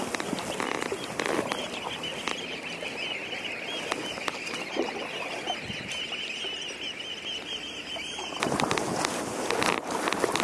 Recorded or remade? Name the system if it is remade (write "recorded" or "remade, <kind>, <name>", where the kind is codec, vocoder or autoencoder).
recorded